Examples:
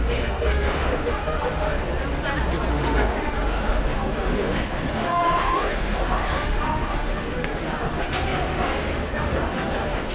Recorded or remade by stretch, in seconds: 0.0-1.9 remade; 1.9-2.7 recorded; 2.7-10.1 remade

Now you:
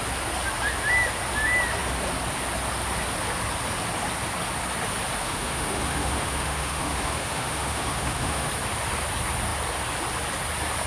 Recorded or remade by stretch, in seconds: 0.0-5.2 recorded; 5.2-8.5 remade; 8.5-10.9 recorded